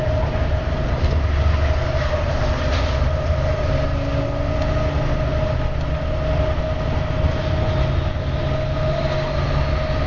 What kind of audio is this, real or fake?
real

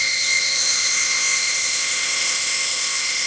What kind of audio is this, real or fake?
fake